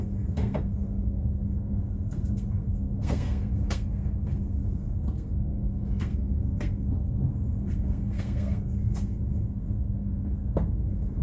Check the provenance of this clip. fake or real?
fake